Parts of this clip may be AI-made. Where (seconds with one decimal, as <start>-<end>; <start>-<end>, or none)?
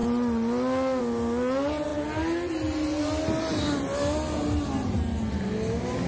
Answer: none